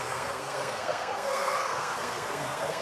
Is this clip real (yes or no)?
no